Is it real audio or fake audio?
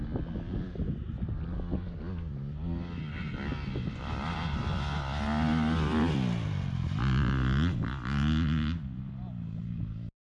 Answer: real